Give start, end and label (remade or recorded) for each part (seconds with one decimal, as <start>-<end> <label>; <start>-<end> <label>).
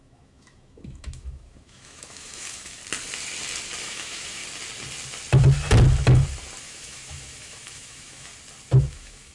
0.0-2.8 remade; 2.8-3.8 recorded; 3.8-4.4 remade; 4.4-6.6 recorded; 6.6-8.3 remade; 8.3-8.9 recorded; 8.9-9.3 remade